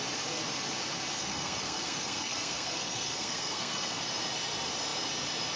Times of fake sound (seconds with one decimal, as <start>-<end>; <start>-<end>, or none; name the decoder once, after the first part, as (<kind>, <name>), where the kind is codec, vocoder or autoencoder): 1.2-4.0 (codec, SNAC)